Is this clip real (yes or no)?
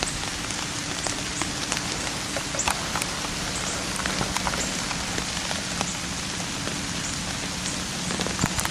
yes